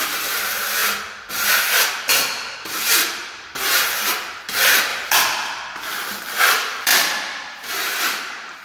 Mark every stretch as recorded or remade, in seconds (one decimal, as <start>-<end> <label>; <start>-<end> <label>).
0.0-0.8 remade; 0.8-1.3 recorded; 1.3-4.9 remade; 4.9-6.4 recorded; 6.4-6.9 remade; 6.9-8.0 recorded; 8.0-8.6 remade